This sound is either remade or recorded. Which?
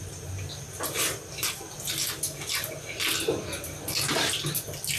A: recorded